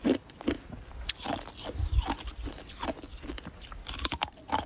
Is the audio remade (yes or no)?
no